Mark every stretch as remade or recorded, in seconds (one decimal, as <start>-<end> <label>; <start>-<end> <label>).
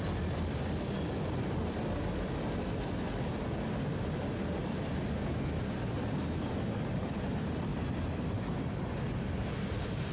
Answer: 0.0-10.1 recorded